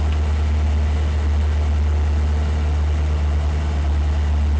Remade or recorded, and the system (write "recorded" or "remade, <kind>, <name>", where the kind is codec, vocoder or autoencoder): recorded